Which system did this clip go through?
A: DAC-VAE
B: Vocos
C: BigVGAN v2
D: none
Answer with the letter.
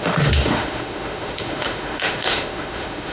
A